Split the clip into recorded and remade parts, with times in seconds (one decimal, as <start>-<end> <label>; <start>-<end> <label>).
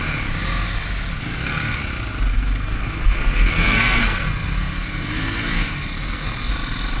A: 0.0-1.2 recorded; 1.2-1.8 remade; 1.8-2.3 recorded; 2.3-6.5 remade; 6.5-7.0 recorded